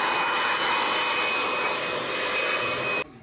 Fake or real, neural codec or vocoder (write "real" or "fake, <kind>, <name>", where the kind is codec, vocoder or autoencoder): real